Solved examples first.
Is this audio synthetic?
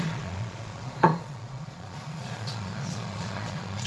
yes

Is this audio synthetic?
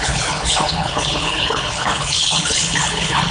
yes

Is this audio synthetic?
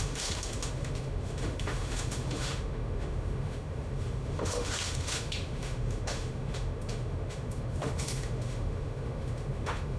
yes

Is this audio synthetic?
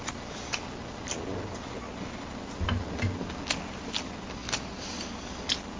no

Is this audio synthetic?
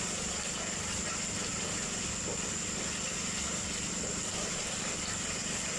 no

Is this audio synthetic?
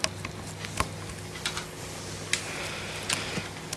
no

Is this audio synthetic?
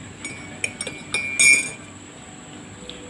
no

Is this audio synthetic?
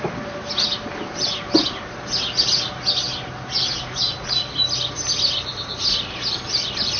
no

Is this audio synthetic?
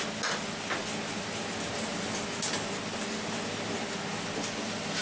no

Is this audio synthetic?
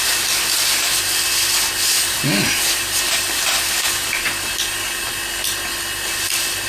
no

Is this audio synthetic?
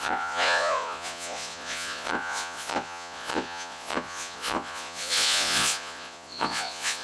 yes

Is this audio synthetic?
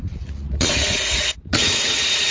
yes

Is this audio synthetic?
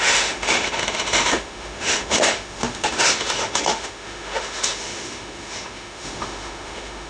yes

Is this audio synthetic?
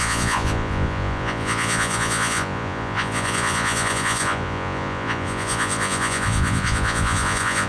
yes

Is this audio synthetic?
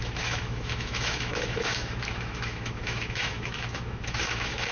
yes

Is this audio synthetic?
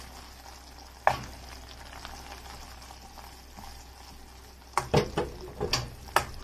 no